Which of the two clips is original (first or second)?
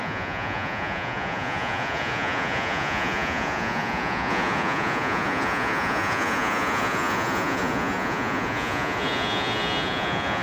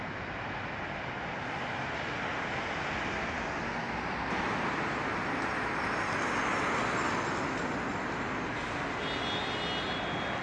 second